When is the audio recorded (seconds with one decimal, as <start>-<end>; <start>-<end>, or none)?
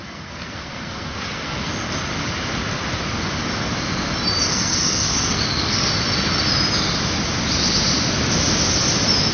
1.7-4.5; 5.9-9.3